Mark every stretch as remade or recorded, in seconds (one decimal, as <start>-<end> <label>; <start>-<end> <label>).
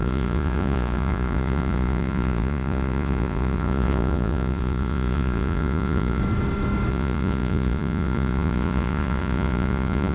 0.0-6.2 remade; 6.2-6.9 recorded; 6.9-10.1 remade